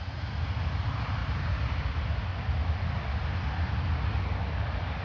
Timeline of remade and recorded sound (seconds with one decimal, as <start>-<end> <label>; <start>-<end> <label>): 0.0-5.0 recorded